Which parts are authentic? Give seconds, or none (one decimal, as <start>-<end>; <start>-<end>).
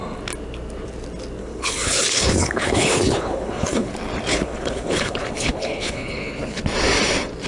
0.0-1.4; 3.9-4.3; 6.6-7.5